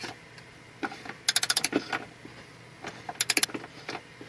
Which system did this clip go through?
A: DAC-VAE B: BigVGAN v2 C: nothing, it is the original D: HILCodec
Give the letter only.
C